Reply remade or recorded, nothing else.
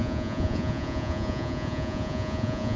remade